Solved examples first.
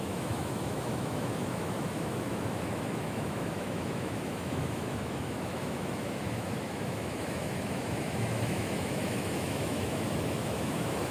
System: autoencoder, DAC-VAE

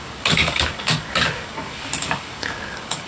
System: codec, DAC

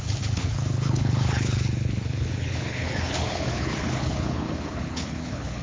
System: codec, HILCodec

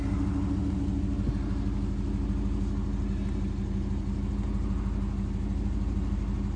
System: none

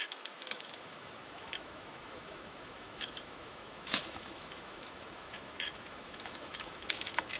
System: autoencoder, DAC-VAE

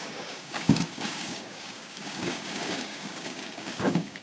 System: codec, DAC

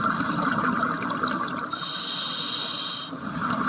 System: none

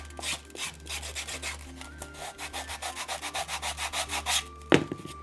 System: none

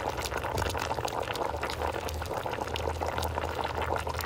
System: none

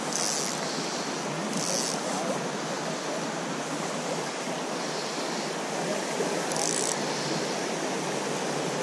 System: none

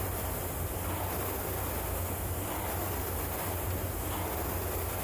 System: none